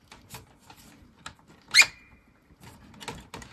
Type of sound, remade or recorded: recorded